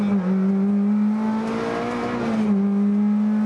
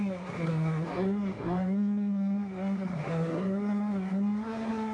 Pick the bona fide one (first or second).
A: first